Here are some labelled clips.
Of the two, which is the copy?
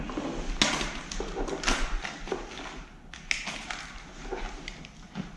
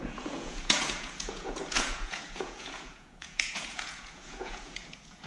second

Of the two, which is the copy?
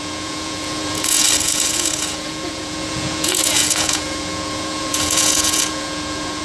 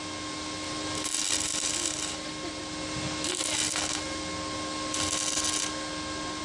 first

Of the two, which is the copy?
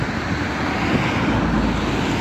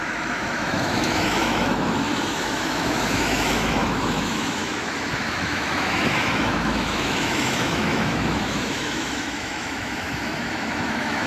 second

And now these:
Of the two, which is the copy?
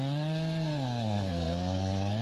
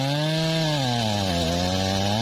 first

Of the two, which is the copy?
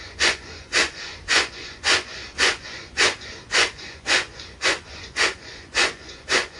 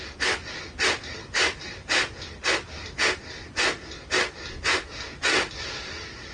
first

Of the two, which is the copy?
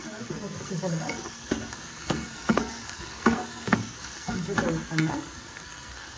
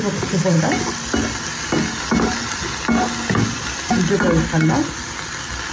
first